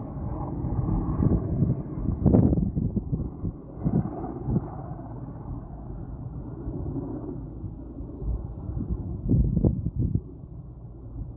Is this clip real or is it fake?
fake